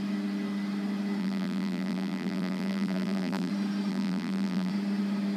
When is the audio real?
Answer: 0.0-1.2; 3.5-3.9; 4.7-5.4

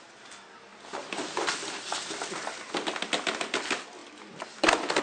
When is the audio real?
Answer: 0.0-5.0

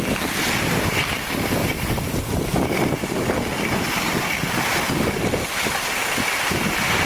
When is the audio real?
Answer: 0.0-1.6; 2.2-6.0

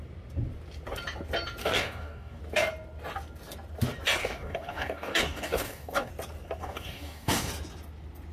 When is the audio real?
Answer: 0.0-1.6; 2.4-4.2; 6.1-6.6; 7.5-8.3

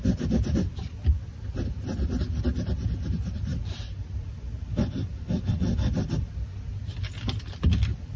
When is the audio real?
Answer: 0.0-8.2